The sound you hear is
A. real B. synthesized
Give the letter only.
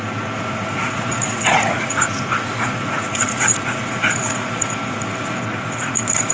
B